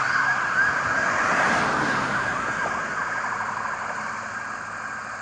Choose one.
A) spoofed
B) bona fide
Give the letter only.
B